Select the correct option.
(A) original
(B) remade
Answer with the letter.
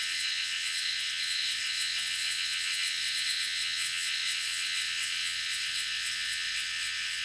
B